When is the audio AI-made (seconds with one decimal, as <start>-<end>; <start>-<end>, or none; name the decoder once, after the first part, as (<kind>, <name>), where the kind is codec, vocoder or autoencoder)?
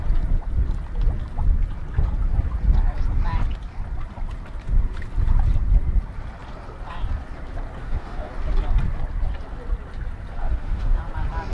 7.8-8.3 (autoencoder, DAC-VAE); 10.4-11.0